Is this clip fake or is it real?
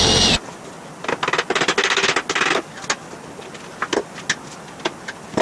real